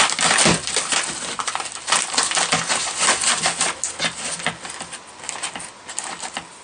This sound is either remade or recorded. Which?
recorded